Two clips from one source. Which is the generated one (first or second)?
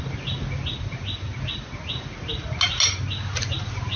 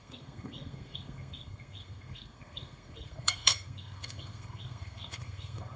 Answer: second